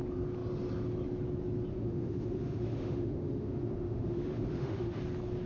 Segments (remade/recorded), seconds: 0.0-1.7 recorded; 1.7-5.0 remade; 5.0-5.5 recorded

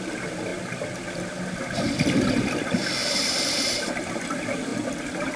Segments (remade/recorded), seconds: 0.0-5.4 recorded

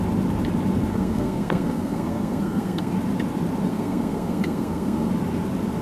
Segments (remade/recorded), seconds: 0.0-0.9 recorded; 0.9-2.9 remade; 2.9-3.7 recorded; 3.7-5.1 remade; 5.1-5.8 recorded

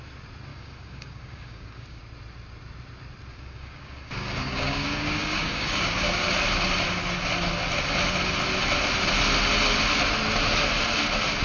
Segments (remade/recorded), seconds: 0.0-0.5 recorded; 0.5-2.0 remade; 2.0-3.3 recorded; 3.3-6.3 remade; 6.3-11.4 recorded

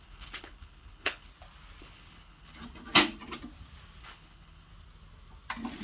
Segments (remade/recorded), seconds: 0.0-1.3 remade; 1.3-1.8 recorded; 1.8-2.6 remade; 2.6-4.0 recorded; 4.0-4.7 remade; 4.7-5.8 recorded

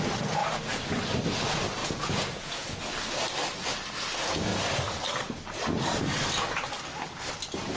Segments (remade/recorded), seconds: 0.0-1.8 recorded; 1.8-2.8 remade; 2.8-7.8 recorded

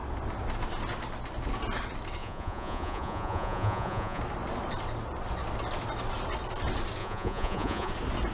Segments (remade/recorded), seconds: 0.0-2.2 recorded; 2.2-4.2 remade; 4.2-7.0 recorded; 7.0-7.9 remade; 7.9-8.3 recorded

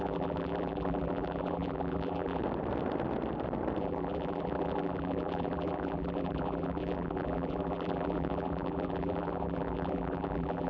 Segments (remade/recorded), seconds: 0.0-2.4 remade; 2.4-3.8 recorded; 3.8-10.7 remade